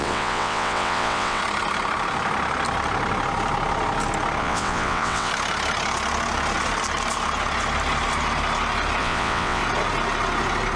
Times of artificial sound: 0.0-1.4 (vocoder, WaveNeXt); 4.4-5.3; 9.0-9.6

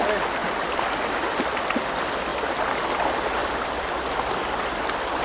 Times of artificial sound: 2.3-3.0 (vocoder, BigVGAN v2); 3.4-4.0

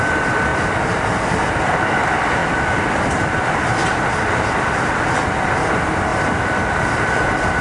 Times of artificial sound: 2.4-5.3 (vocoder, BigVGAN v2); 6.1-7.6

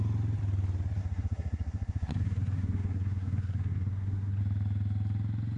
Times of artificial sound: 1.0-4.4 (codec, SNAC)

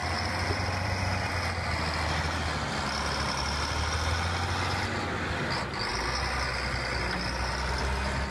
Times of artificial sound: 0.0-1.3 (vocoder, BigVGAN v2)

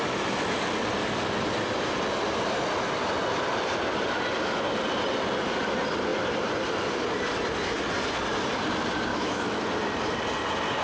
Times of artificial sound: 9.1-9.6 (autoencoder, DAC-VAE)

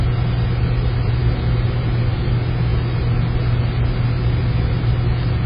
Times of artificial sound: none